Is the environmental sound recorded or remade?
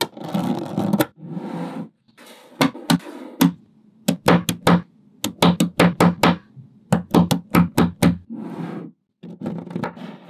recorded